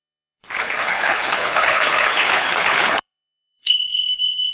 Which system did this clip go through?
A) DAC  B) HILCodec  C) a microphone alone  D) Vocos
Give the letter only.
B